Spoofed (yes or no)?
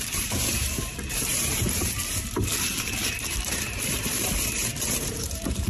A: yes